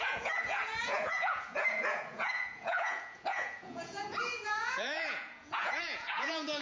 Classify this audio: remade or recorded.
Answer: remade